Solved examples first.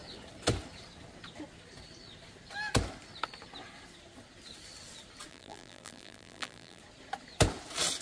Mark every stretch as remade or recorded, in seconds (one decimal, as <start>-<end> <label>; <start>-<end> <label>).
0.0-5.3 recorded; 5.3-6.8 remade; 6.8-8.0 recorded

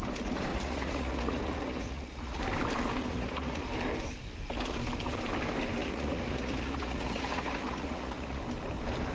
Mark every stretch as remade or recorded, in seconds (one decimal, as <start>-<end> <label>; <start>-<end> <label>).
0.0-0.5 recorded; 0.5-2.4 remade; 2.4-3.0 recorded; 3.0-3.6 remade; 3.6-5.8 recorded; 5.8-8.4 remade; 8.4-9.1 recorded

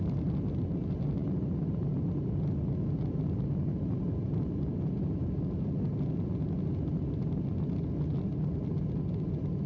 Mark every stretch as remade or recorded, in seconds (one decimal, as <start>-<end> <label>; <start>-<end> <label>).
0.0-9.7 recorded

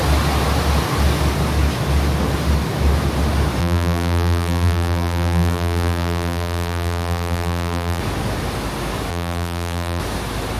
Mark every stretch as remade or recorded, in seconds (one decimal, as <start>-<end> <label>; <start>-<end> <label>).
0.0-3.6 recorded; 3.6-8.0 remade; 8.0-9.1 recorded; 9.1-10.0 remade; 10.0-10.6 recorded

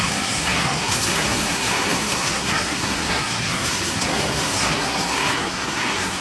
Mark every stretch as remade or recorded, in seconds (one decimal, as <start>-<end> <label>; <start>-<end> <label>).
0.0-6.2 remade

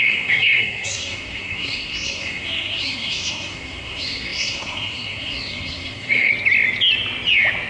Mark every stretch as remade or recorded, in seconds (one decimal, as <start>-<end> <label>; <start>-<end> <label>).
0.0-6.3 remade; 6.3-7.7 recorded